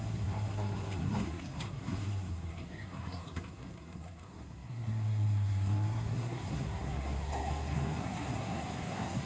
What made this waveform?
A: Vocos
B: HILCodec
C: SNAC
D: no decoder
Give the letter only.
C